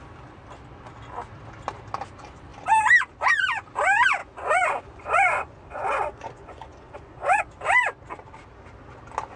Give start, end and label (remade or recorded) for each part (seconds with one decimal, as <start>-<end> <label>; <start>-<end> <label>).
0.0-4.2 recorded; 4.2-7.4 remade; 7.4-9.4 recorded